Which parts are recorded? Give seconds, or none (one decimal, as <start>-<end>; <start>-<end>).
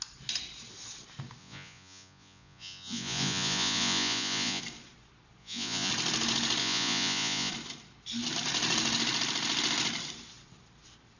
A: 0.0-1.4; 4.6-5.4; 5.9-6.6; 7.5-11.2